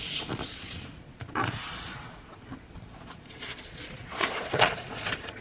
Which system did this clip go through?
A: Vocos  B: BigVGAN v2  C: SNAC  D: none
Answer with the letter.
A